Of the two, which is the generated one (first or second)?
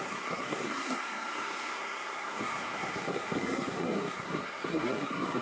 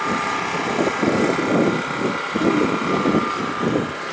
first